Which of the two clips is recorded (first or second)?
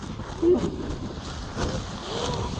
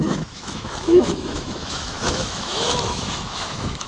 first